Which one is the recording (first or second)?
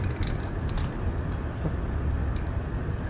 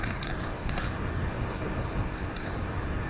first